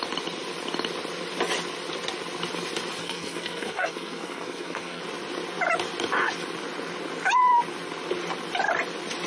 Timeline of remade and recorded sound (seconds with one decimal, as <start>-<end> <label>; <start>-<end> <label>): 0.0-3.0 recorded; 3.0-5.0 remade; 5.0-9.3 recorded